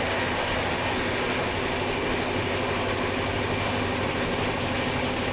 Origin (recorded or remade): recorded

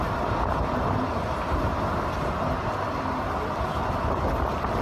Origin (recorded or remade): recorded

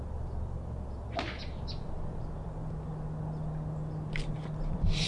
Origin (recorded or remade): recorded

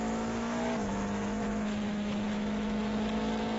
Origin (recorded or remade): remade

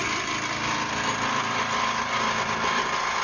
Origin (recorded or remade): recorded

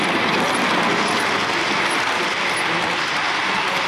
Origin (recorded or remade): recorded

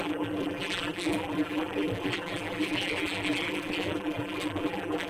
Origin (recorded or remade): remade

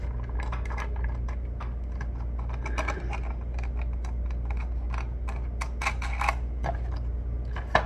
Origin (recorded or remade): recorded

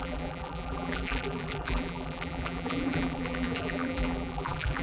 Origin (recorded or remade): remade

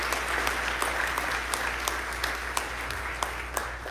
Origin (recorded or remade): recorded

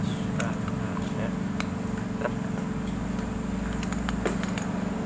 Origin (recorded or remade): recorded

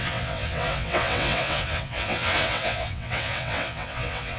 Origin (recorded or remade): remade